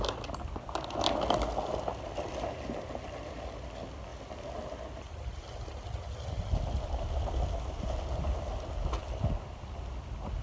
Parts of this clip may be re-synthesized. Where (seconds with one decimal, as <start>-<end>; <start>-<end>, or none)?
none